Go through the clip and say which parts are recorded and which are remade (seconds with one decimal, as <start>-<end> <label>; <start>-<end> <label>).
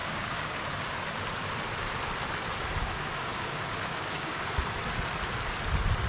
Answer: 0.0-0.6 remade; 0.6-2.8 recorded; 2.8-4.4 remade; 4.4-6.1 recorded